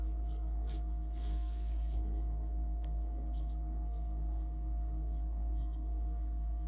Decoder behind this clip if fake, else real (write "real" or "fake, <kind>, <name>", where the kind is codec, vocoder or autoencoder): fake, codec, SNAC